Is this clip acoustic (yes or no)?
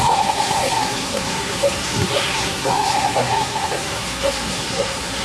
no